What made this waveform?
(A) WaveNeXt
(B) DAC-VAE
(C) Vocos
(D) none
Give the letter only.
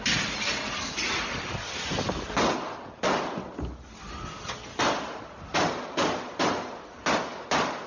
D